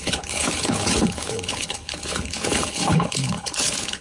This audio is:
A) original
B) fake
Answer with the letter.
B